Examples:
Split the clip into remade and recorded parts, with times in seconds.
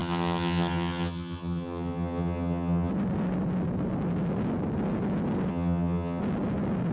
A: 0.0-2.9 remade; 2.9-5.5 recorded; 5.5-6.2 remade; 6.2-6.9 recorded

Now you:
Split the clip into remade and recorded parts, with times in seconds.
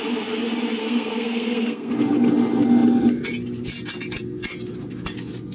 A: 0.0-0.8 recorded; 0.8-1.9 remade; 1.9-5.5 recorded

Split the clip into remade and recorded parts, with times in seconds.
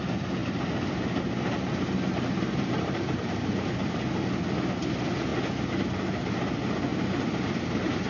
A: 0.0-0.4 recorded; 0.4-4.3 remade; 4.3-6.9 recorded; 6.9-8.1 remade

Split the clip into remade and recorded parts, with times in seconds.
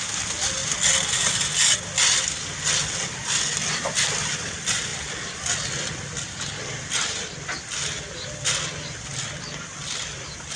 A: 0.0-10.6 recorded